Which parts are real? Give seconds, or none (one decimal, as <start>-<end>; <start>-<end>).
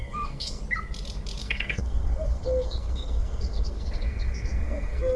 0.6-1.4